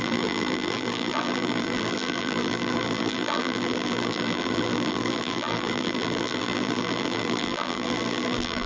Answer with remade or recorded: remade